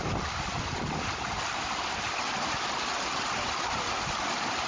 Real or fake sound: real